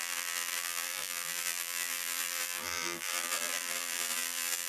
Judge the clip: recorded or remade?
remade